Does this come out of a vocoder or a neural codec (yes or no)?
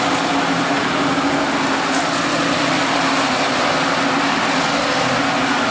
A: no